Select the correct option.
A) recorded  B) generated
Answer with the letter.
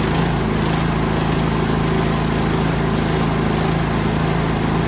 A